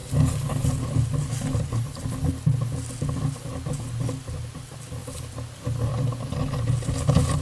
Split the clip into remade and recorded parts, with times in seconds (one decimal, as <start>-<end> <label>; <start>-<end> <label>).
0.0-7.4 recorded